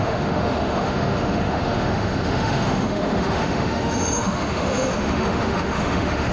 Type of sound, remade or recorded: remade